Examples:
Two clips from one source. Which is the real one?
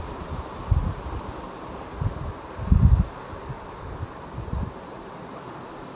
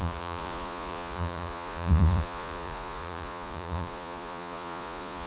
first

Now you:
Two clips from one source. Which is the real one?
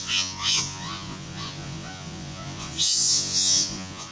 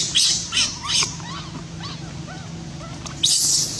second